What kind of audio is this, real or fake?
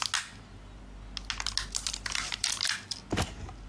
real